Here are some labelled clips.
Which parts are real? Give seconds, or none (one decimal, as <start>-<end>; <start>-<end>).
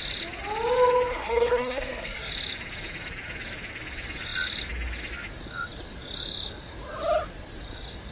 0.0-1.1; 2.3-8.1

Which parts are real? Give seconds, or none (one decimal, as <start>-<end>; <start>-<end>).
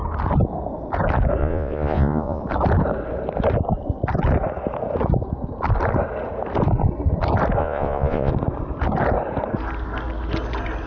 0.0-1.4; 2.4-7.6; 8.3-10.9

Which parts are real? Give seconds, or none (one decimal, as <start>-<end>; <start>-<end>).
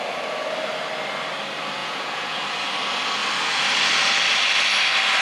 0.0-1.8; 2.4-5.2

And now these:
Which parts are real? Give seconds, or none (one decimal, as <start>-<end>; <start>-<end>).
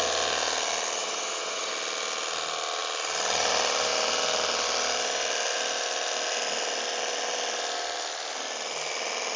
0.0-1.0; 1.7-9.4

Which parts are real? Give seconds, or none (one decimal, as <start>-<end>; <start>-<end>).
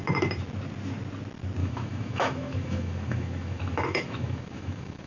0.0-1.6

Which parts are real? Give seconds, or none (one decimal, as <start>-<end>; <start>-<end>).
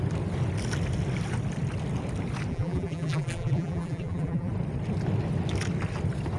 0.0-2.5; 4.5-6.4